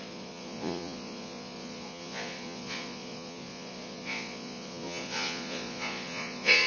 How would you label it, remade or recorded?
remade